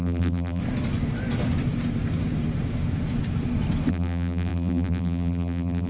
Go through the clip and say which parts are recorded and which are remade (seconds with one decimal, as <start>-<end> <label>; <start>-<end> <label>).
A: 0.0-0.6 remade; 0.6-3.9 recorded; 3.9-5.9 remade